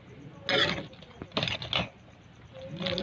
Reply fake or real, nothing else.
real